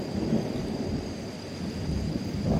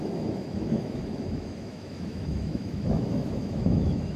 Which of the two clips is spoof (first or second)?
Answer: second